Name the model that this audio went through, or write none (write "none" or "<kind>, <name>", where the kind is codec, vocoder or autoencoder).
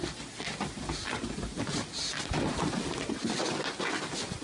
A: none